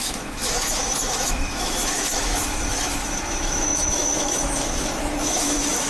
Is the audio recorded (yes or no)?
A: no